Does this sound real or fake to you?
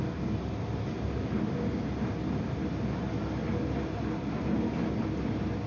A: real